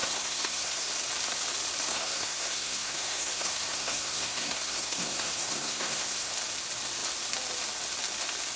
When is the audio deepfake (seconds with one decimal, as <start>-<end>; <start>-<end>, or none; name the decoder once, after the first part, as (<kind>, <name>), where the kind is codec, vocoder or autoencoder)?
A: 0.0-0.9 (codec, SNAC); 1.9-6.3